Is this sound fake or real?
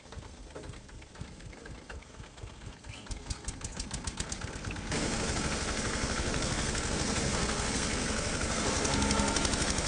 fake